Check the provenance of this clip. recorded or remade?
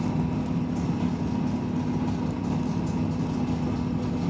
recorded